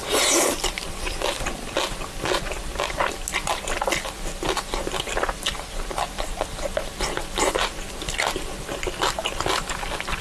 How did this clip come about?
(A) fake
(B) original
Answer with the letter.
B